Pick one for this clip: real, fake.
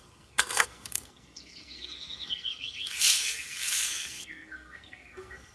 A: fake